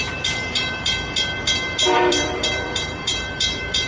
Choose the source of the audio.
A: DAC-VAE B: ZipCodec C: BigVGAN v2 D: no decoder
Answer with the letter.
C